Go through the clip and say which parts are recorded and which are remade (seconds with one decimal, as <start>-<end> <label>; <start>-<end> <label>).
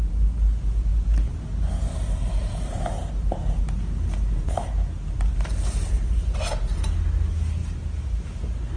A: 0.0-8.8 recorded